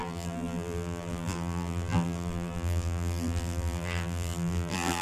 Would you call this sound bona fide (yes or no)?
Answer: no